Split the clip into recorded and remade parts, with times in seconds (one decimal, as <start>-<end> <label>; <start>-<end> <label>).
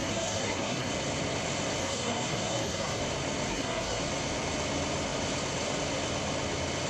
0.0-0.9 remade; 0.9-1.8 recorded; 1.8-3.0 remade; 3.0-3.5 recorded; 3.5-4.0 remade; 4.0-6.9 recorded